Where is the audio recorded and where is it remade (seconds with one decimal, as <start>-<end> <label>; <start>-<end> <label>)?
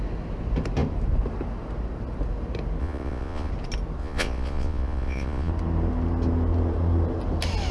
0.0-2.8 recorded; 2.8-3.5 remade; 3.5-4.0 recorded; 4.0-5.5 remade; 5.5-7.7 recorded